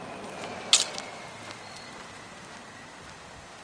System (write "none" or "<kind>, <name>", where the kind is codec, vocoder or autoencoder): none